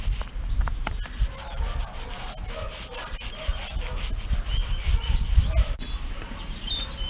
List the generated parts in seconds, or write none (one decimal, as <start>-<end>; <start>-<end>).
4.6-7.1